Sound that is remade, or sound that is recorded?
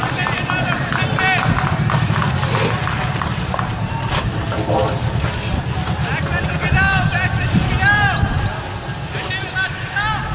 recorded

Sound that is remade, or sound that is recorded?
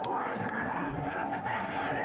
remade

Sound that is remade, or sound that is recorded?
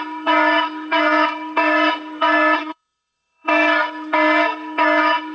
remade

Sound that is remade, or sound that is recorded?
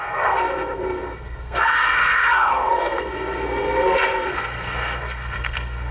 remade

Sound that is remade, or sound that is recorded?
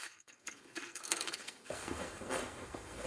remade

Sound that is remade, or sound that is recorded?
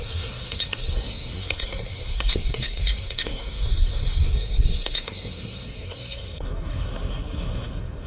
remade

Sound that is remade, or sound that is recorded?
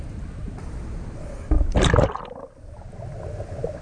recorded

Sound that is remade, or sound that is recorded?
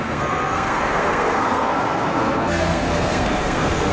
remade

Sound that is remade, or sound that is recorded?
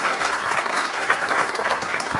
remade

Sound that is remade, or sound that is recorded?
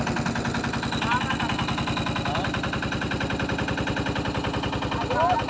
recorded